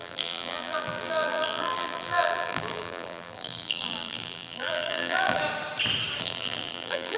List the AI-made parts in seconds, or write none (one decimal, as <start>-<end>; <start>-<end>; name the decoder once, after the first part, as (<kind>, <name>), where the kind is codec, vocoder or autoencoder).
0.0-5.4 (vocoder, BigVGAN v2); 6.2-7.2